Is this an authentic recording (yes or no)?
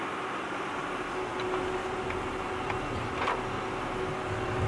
yes